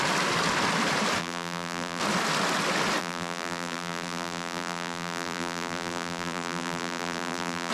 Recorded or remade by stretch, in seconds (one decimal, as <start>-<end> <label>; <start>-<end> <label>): 0.0-1.2 recorded; 1.2-2.0 remade; 2.0-3.0 recorded; 3.0-7.7 remade